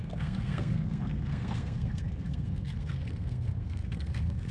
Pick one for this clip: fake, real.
fake